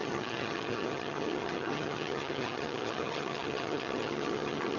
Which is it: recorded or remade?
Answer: remade